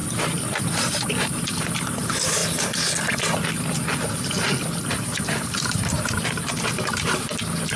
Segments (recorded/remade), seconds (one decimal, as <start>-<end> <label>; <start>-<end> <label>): 0.0-2.4 remade; 2.4-4.9 recorded; 4.9-7.8 remade